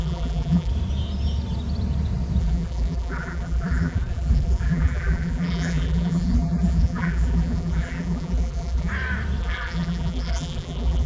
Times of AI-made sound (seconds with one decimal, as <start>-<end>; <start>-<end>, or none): 0.0-0.7; 2.4-8.9; 9.4-11.1